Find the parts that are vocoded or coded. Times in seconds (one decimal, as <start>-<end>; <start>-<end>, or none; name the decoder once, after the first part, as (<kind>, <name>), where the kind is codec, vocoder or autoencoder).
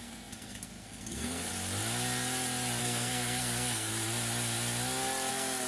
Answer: 0.0-1.5 (codec, SNAC); 2.8-3.9; 5.3-5.7